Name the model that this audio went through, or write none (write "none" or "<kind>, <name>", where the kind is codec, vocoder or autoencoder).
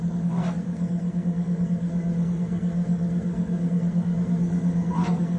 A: codec, SNAC